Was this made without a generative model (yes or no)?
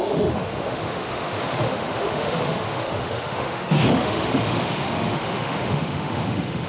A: no